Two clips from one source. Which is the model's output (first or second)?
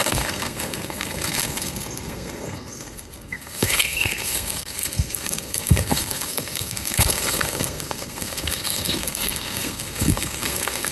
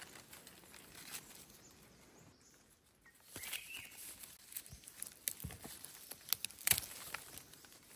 first